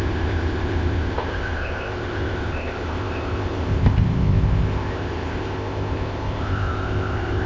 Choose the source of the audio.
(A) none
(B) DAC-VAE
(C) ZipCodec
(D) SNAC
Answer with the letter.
C